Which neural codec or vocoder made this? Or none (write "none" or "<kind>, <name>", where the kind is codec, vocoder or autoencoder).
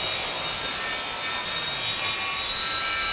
none